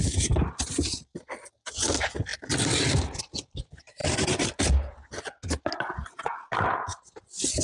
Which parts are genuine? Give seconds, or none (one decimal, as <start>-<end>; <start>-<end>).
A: 0.0-7.6